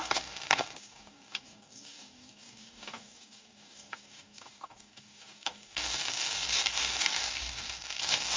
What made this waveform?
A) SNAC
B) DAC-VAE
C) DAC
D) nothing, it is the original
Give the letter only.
C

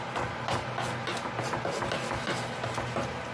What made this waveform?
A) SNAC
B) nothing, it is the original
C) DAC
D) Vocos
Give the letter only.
B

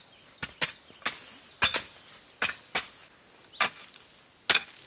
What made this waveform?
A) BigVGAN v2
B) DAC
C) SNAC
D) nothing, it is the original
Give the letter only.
D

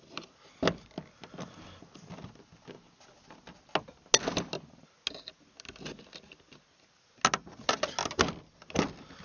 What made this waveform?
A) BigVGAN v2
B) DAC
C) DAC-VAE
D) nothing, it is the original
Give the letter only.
D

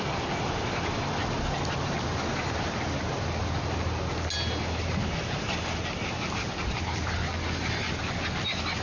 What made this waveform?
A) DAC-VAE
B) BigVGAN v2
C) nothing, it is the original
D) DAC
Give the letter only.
C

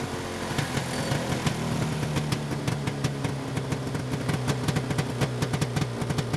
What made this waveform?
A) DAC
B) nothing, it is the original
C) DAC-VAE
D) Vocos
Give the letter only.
B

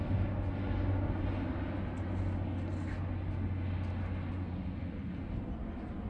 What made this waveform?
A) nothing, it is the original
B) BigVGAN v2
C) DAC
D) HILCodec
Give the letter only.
A